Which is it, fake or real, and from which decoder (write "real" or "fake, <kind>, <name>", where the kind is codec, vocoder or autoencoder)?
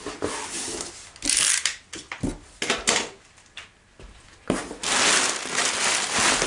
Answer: real